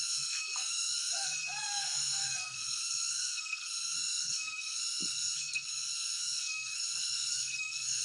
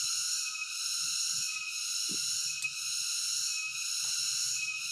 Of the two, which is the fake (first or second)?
first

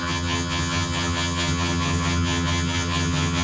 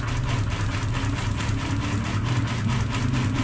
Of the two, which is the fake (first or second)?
first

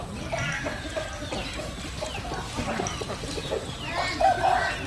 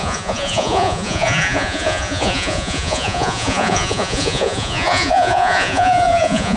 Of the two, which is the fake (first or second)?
second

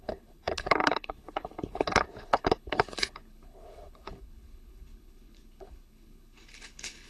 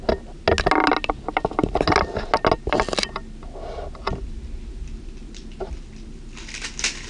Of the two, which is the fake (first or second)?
first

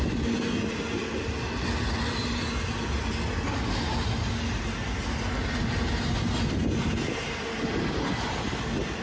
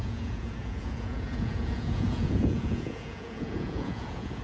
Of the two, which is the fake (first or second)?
second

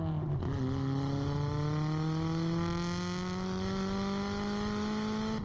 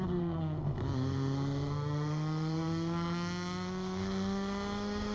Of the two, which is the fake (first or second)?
second